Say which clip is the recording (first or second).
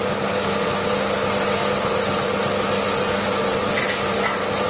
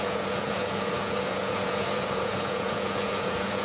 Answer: first